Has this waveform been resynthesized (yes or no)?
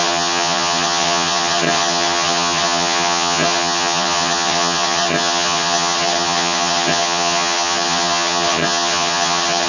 yes